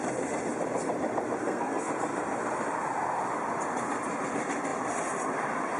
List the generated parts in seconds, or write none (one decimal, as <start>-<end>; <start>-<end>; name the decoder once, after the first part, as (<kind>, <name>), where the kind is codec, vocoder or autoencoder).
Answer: 1.4-1.9 (codec, SNAC)